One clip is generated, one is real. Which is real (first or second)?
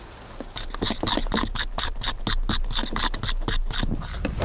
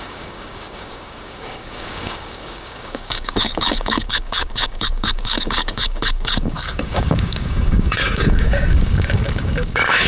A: first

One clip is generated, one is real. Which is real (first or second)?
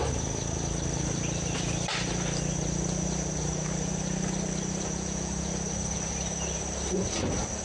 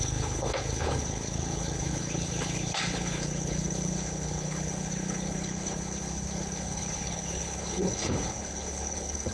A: first